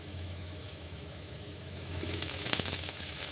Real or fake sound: fake